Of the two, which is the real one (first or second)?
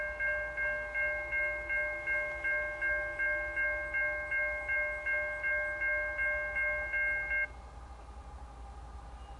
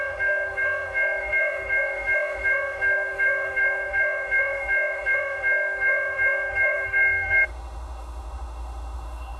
first